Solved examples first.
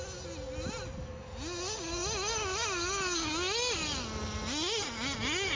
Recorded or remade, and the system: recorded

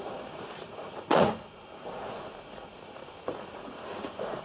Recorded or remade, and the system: remade, vocoder, Vocos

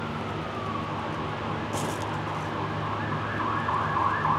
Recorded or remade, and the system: recorded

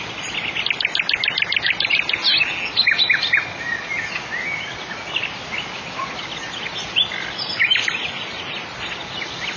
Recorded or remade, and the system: recorded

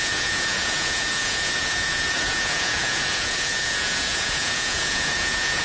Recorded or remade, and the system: remade, vocoder, Vocos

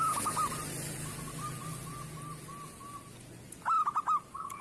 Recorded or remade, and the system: recorded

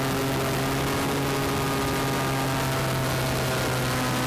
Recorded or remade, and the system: recorded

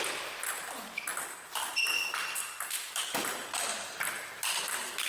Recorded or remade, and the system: recorded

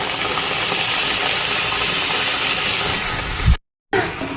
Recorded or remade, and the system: recorded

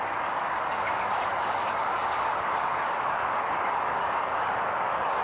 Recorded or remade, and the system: remade, codec, DAC